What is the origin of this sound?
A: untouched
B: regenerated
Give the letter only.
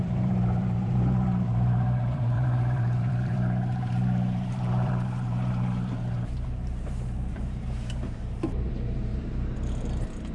B